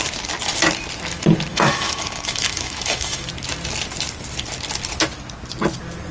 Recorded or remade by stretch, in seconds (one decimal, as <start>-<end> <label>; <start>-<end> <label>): 0.0-1.5 recorded; 1.5-3.3 remade; 3.3-6.1 recorded